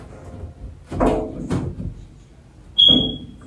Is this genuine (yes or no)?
yes